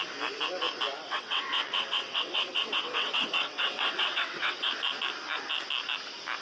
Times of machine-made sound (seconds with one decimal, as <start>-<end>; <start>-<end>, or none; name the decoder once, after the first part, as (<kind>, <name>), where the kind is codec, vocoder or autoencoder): 0.9-4.7 (vocoder, WaveNeXt)